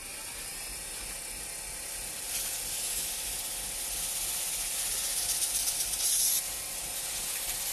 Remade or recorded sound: recorded